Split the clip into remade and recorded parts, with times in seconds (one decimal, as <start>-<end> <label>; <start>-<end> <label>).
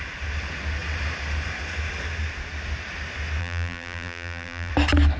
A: 0.0-3.4 recorded; 3.4-4.7 remade; 4.7-5.2 recorded